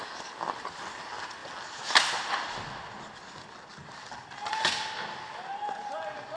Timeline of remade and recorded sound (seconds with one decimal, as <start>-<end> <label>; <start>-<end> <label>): 0.0-6.4 recorded